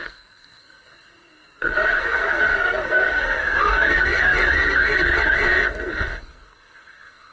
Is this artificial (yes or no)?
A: yes